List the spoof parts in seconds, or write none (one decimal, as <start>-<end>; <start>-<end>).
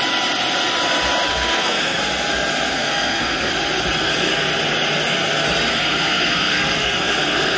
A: 1.3-2.0; 2.7-3.5; 5.7-7.6